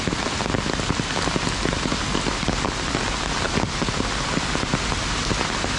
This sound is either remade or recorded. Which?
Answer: recorded